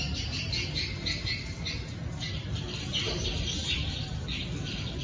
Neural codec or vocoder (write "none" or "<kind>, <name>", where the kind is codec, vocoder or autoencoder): none